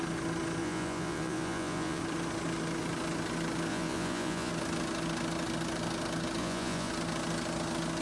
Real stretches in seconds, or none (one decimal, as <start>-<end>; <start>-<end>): 0.0-0.6; 2.0-3.7; 4.5-6.4; 6.9-8.0